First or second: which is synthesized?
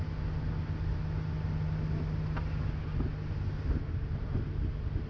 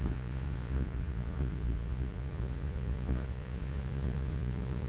second